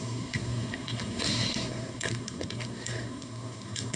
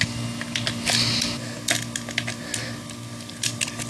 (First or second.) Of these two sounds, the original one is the second